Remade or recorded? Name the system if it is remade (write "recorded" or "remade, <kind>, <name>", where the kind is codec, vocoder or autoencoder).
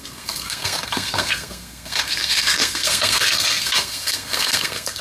remade, codec, SNAC